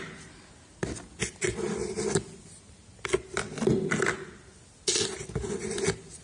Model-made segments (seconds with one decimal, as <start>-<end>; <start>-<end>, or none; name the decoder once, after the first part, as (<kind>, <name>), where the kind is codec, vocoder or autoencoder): none

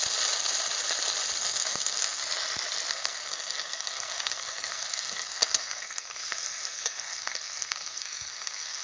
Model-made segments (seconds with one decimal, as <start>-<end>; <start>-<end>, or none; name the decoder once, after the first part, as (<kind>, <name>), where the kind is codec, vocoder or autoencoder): 1.4-2.2 (codec, SNAC); 2.9-8.8

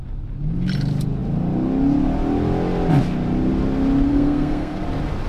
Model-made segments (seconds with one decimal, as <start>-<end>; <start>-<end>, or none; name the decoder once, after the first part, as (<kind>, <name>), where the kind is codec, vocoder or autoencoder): 4.1-4.8 (codec, SNAC)

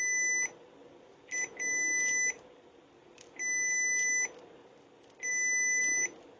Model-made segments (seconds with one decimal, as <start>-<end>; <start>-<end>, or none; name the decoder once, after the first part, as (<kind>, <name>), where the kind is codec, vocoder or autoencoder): none

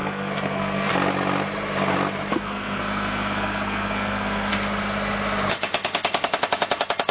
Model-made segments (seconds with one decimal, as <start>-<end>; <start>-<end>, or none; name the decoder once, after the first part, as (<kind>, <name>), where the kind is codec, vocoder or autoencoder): 0.0-0.9 (codec, SNAC); 2.3-4.5

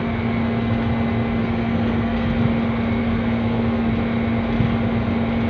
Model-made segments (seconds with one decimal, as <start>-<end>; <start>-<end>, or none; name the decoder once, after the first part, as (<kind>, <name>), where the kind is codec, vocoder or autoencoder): 1.4-2.4 (codec, SNAC); 3.0-3.9

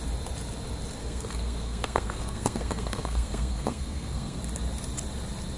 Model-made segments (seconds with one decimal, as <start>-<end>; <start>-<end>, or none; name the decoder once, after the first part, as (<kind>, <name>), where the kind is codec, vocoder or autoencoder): 1.0-4.4 (codec, SNAC)